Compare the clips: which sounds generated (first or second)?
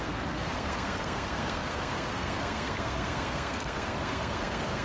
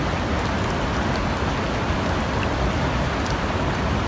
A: first